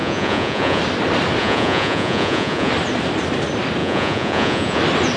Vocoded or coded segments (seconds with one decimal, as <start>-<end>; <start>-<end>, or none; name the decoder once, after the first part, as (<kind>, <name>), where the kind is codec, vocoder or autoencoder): 0.0-0.8 (vocoder, Vocos); 1.4-2.7; 3.8-4.8